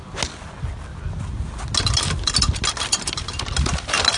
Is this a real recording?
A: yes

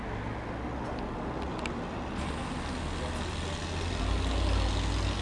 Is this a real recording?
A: yes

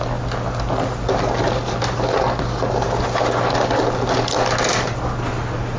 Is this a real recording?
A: yes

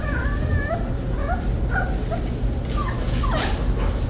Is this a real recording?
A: yes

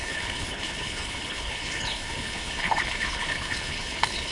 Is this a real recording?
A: no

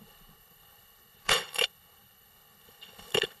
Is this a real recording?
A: no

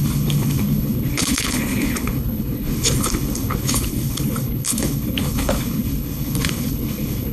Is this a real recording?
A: no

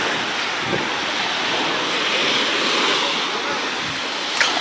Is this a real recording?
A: yes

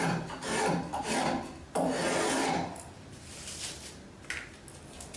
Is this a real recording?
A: yes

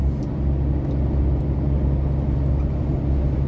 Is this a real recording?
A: yes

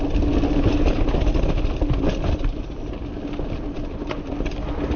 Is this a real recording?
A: yes